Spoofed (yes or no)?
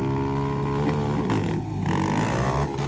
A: no